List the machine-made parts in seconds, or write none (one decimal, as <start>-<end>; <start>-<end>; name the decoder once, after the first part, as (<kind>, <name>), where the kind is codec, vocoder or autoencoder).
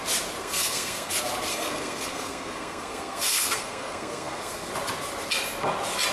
0.4-1.1 (codec, SNAC); 1.5-4.7